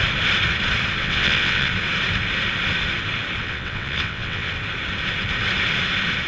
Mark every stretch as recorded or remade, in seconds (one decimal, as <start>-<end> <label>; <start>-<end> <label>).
0.0-1.0 recorded; 1.0-1.7 remade; 1.7-3.4 recorded; 3.4-4.5 remade; 4.5-6.3 recorded